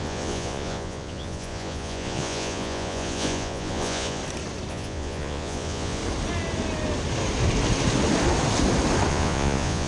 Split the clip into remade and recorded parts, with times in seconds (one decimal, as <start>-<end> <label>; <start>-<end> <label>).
0.0-4.2 remade; 4.2-4.7 recorded; 4.7-6.0 remade; 6.0-9.1 recorded; 9.1-9.9 remade

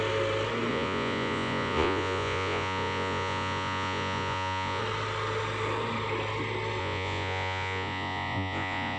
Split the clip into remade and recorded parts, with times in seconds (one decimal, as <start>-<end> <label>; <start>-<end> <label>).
0.0-0.7 recorded; 0.7-4.8 remade; 4.8-6.8 recorded; 6.8-9.0 remade